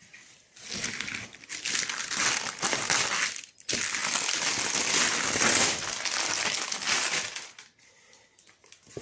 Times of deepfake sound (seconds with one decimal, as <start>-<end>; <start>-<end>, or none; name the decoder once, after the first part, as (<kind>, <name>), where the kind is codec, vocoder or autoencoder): none